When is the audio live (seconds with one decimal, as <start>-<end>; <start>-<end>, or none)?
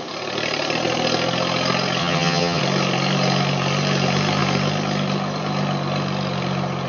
0.0-2.0; 2.6-6.9